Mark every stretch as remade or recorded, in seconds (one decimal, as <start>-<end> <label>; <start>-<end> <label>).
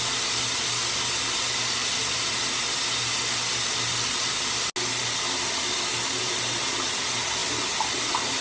0.0-8.4 recorded